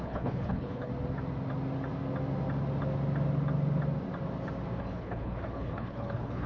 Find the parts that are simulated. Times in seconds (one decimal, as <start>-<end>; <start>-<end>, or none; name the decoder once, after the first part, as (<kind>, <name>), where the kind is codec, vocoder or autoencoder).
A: 0.0-0.9 (codec, HILCodec); 4.8-6.5